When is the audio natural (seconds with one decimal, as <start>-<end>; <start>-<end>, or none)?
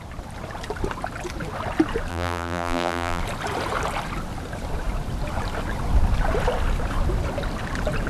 0.0-2.1; 3.2-8.1